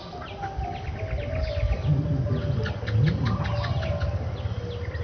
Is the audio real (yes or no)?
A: yes